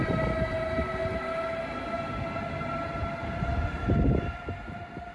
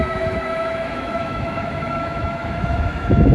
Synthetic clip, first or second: second